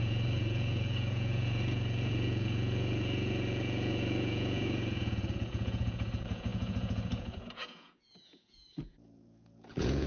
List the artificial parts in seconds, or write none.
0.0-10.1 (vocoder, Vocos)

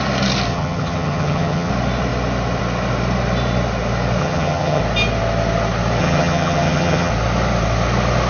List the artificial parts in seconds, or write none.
0.5-1.7 (vocoder, HiFi-GAN); 4.2-4.8; 6.0-7.1

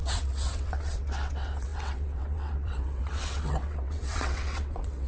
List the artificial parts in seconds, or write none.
0.0-5.1 (vocoder, WaveNeXt)

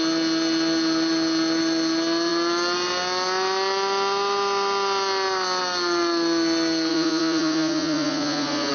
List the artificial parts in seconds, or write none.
6.9-8.7 (vocoder, Vocos)